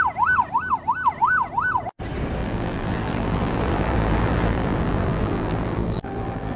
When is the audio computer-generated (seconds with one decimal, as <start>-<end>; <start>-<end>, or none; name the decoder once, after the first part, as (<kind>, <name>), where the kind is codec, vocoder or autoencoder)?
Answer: 2.4-6.6 (vocoder, BigVGAN v2)